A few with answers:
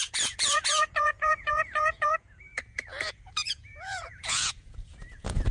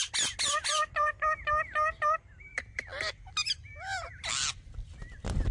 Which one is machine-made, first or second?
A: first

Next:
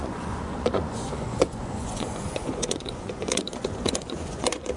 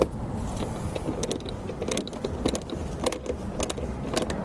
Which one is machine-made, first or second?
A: first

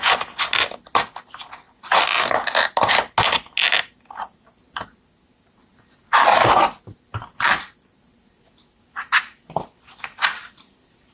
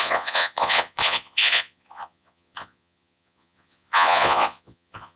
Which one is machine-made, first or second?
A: second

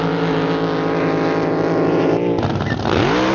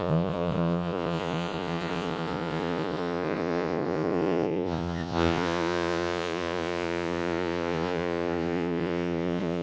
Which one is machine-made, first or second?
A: second